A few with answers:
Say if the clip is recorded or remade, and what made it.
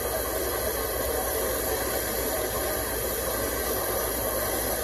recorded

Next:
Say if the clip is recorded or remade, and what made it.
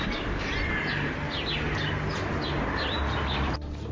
recorded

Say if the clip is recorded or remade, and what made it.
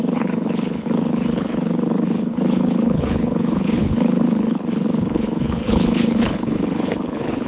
remade, codec, HILCodec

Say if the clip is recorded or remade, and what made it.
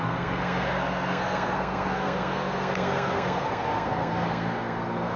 remade, codec, SNAC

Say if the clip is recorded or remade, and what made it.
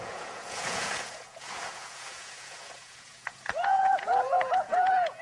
remade, vocoder, Vocos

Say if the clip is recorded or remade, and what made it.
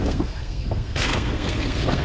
remade, codec, SNAC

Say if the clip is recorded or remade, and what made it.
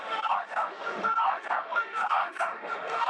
remade, autoencoder, DAC-VAE